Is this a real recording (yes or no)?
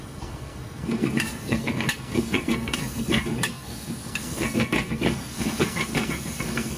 no